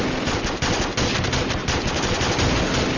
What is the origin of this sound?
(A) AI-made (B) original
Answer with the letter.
B